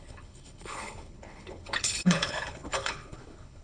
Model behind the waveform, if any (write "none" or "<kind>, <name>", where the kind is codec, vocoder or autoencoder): codec, HILCodec